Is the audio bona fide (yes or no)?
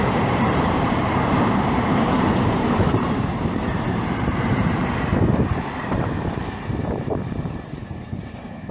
no